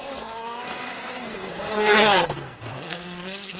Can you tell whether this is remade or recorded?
remade